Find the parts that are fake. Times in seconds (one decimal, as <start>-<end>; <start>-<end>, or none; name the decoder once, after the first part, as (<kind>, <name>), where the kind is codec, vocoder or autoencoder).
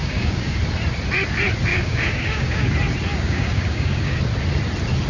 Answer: 0.0-0.6 (codec, DAC); 1.7-2.7; 3.1-4.2